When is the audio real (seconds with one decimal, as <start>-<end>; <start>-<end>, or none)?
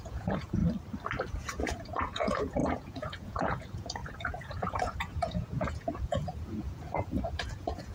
0.6-1.3